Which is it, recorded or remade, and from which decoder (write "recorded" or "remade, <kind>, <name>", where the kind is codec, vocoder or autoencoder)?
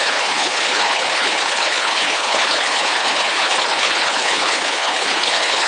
remade, codec, HILCodec